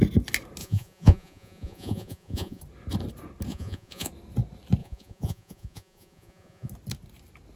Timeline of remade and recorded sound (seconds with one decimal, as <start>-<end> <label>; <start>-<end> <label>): 0.0-0.6 recorded; 0.6-2.6 remade; 2.6-3.5 recorded; 3.5-4.1 remade; 4.1-4.8 recorded; 4.8-6.7 remade; 6.7-7.6 recorded